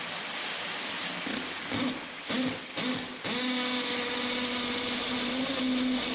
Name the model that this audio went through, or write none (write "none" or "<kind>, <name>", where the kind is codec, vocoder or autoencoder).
none